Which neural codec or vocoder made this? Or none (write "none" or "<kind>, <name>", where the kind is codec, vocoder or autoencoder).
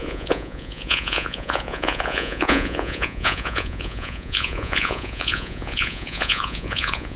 vocoder, Vocos